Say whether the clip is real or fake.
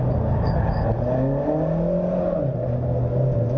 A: real